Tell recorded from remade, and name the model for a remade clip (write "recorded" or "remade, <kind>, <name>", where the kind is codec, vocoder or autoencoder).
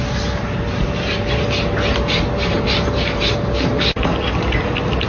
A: recorded